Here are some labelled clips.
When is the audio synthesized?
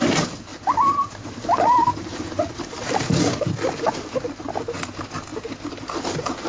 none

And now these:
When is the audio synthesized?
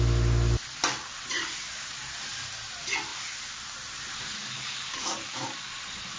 4.4-5.7 (codec, DAC)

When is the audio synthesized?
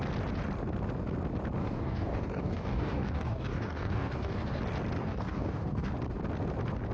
1.6-4.6 (codec, DAC); 5.0-5.9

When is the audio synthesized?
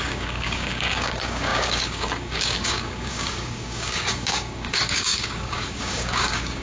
0.0-6.6 (codec, DAC)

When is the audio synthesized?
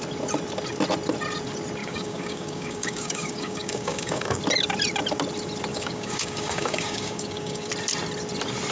1.8-4.4 (codec, DAC); 5.7-7.7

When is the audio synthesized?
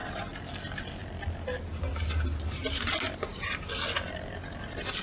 none